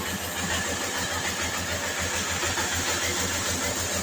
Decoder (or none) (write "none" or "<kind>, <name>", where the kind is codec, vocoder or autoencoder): none